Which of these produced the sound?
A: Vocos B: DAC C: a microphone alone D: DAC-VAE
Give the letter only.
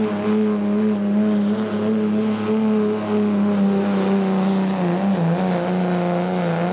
C